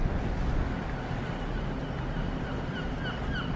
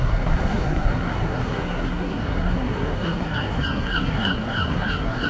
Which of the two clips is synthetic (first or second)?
second